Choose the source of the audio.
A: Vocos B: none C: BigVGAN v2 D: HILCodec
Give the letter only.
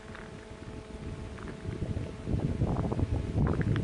B